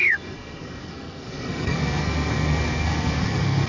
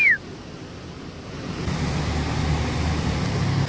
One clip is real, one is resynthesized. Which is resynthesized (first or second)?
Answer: first